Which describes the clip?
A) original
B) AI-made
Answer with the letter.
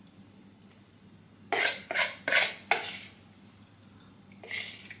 A